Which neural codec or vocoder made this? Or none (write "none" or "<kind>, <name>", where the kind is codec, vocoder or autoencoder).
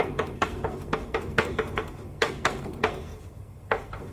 codec, SNAC